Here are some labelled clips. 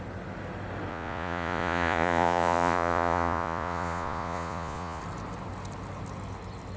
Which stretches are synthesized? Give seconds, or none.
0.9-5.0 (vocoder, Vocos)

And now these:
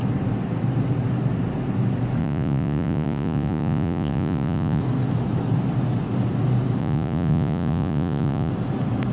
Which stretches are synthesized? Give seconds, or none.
2.2-4.8 (vocoder, Vocos); 6.8-8.5

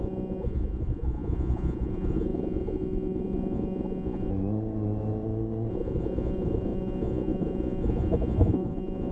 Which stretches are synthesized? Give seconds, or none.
0.0-4.3 (vocoder, Vocos); 5.7-9.1

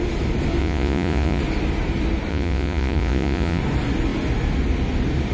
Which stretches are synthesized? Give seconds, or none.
0.6-1.4 (vocoder, Vocos); 2.3-3.6

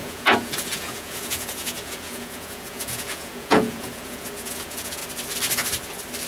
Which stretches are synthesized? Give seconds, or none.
0.0-5.0 (vocoder, Vocos)

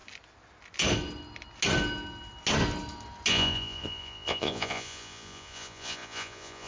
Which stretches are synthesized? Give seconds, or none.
3.3-6.7 (vocoder, Vocos)